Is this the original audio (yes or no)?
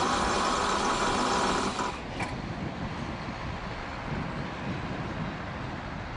yes